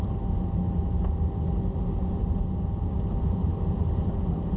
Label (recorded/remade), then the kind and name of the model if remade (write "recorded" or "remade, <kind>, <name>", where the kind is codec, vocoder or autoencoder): remade, vocoder, BigVGAN v2